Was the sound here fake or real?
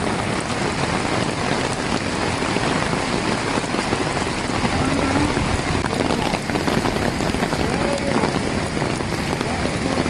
real